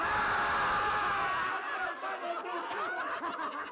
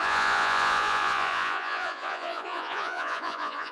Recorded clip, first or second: first